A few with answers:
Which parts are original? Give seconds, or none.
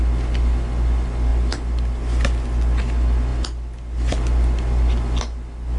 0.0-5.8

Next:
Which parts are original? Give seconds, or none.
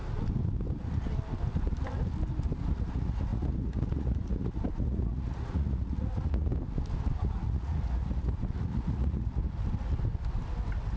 0.0-2.7; 6.5-7.2; 9.4-11.0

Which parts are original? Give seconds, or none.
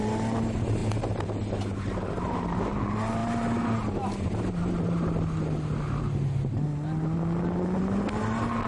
0.0-8.7